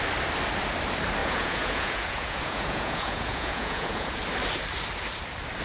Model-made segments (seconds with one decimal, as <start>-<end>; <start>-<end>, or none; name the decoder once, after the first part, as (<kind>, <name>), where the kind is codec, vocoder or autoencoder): 1.2-4.2 (vocoder, Vocos)